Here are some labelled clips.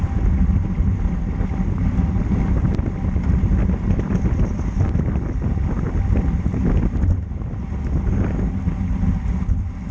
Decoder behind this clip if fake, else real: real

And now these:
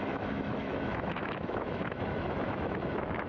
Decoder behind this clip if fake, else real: fake, autoencoder, DAC-VAE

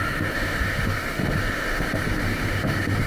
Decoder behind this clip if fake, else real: fake, autoencoder, DAC-VAE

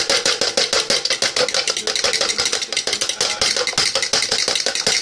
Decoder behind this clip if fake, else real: real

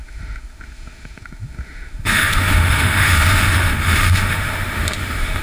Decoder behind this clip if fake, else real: fake, autoencoder, DAC-VAE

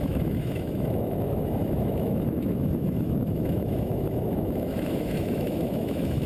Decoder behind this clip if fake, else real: fake, autoencoder, DAC-VAE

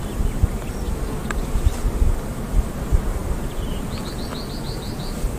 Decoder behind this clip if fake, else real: real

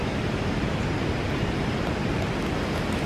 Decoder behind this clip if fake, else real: real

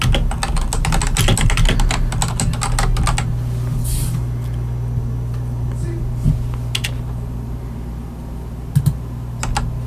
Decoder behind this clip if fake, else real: real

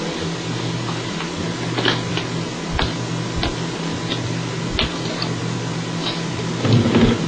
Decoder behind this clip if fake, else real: real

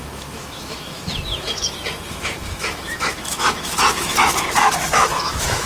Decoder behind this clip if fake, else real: fake, autoencoder, DAC-VAE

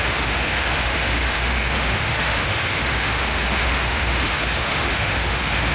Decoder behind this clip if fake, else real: fake, autoencoder, DAC-VAE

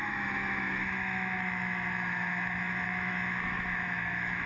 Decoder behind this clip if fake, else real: fake, autoencoder, DAC-VAE